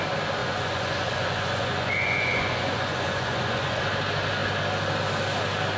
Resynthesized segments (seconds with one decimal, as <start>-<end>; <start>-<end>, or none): 0.4-3.8